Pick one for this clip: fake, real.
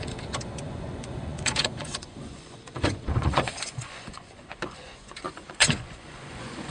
fake